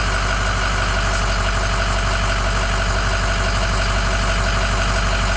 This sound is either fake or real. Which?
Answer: real